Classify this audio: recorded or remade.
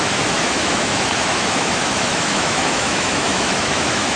remade